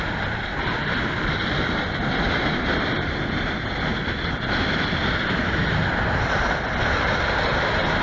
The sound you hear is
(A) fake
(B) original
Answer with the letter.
B